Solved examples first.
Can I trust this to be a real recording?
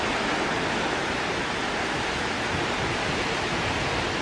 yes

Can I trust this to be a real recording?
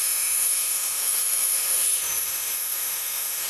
no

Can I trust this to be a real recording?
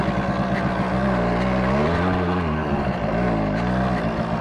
yes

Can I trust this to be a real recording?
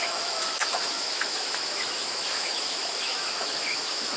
no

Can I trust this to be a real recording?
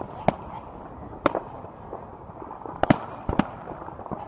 yes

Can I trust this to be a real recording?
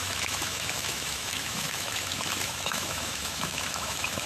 no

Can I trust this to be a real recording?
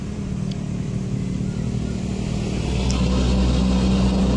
yes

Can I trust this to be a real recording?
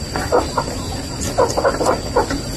yes